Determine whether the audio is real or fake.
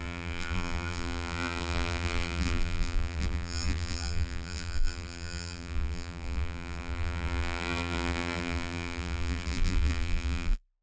fake